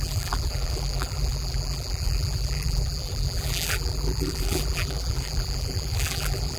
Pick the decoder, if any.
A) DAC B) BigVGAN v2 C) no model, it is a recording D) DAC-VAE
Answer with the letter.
B